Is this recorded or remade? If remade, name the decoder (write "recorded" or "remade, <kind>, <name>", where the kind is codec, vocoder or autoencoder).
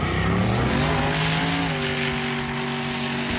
recorded